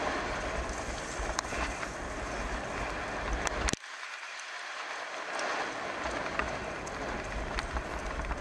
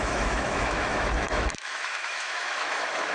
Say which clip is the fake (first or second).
second